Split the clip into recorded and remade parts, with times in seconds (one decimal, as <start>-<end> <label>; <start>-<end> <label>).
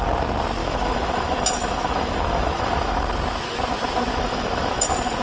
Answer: 0.0-0.6 recorded; 0.6-3.0 remade; 3.0-4.1 recorded; 4.1-4.8 remade; 4.8-5.2 recorded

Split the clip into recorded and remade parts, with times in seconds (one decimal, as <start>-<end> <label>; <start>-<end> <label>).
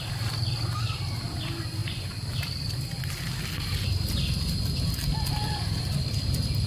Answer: 0.0-6.7 recorded